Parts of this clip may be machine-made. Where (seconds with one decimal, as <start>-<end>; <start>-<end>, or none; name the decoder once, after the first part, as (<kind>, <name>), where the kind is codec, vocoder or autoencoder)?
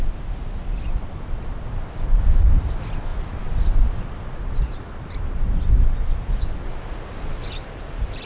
none